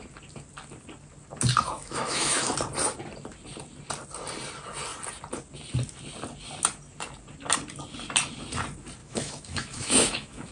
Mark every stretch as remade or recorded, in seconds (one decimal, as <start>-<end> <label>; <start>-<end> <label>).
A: 0.0-1.6 recorded; 1.6-2.5 remade; 2.5-9.0 recorded; 9.0-10.5 remade